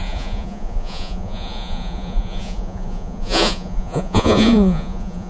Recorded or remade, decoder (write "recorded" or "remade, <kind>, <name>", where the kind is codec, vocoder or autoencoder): remade, vocoder, Vocos